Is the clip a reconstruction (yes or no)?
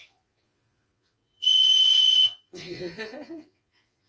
yes